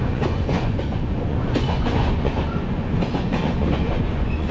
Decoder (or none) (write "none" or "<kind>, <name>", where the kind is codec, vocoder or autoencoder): vocoder, Vocos